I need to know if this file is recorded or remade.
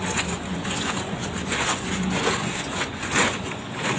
remade